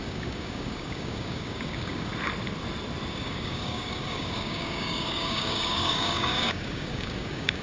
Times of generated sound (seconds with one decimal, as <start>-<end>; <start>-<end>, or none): 0.0-2.1; 3.1-7.6